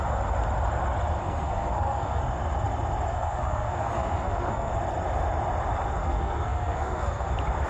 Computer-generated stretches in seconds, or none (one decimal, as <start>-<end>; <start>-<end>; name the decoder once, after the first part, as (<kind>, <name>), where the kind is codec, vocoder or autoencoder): 1.2-2.2 (codec, SNAC); 3.1-4.7; 6.0-7.3